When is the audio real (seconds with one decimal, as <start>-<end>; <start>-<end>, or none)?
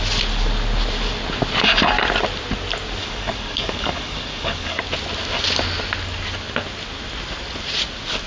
0.0-3.0; 4.8-8.3